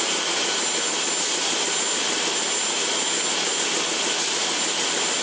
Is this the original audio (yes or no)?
yes